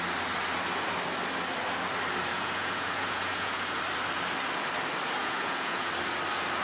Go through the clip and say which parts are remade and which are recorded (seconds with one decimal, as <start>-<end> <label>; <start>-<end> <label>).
0.0-2.3 recorded; 2.3-3.8 remade; 3.8-5.2 recorded; 5.2-5.9 remade; 5.9-6.6 recorded